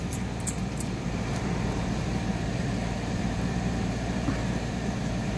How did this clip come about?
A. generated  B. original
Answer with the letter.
A